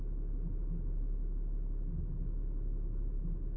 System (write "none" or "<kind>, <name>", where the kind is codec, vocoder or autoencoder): none